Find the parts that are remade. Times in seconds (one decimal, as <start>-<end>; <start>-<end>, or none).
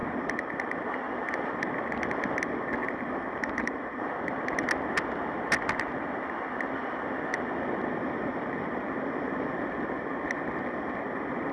2.8-4.1; 8.3-8.9